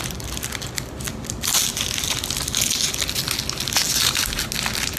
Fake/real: real